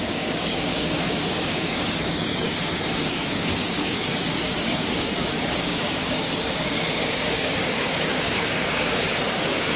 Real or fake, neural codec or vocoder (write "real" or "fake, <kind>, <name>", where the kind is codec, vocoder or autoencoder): fake, codec, DAC